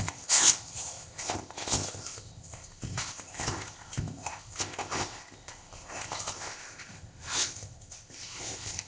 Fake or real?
fake